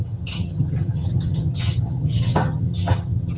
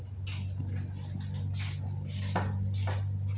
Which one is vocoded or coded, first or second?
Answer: first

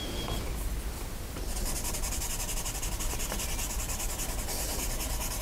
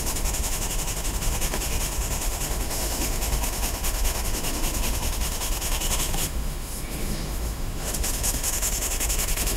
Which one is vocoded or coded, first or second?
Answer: second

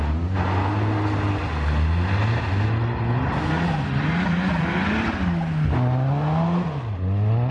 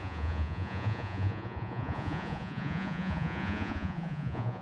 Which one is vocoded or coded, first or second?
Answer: second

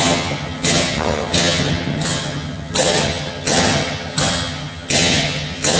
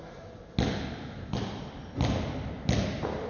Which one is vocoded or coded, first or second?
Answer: first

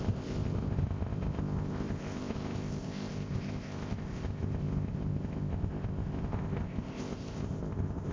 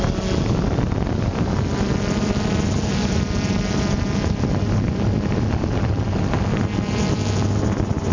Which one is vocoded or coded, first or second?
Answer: first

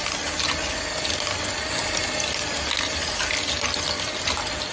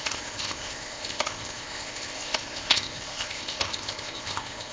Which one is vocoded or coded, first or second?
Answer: second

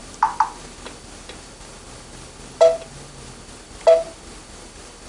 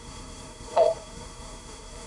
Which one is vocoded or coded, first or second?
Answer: second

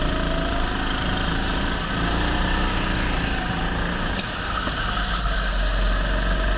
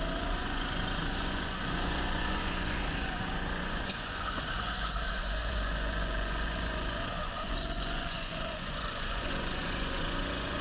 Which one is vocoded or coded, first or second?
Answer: second